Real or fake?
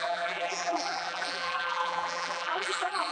fake